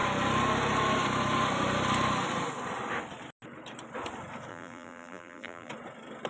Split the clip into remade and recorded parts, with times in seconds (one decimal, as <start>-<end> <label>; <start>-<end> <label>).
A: 0.0-4.5 recorded; 4.5-5.7 remade; 5.7-6.3 recorded